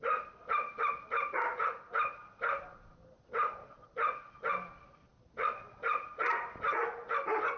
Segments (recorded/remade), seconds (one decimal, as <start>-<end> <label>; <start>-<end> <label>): 0.0-7.6 recorded